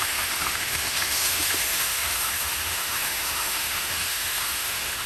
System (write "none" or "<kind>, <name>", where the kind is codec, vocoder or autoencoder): autoencoder, DAC-VAE